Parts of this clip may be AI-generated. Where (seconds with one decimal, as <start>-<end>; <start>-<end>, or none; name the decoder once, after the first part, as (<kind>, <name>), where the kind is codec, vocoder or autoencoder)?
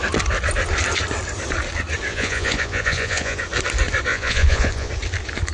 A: 2.1-3.4 (vocoder, Vocos); 4.1-4.9